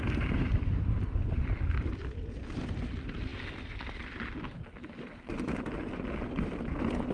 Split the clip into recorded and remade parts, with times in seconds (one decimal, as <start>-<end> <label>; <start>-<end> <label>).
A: 0.0-7.1 recorded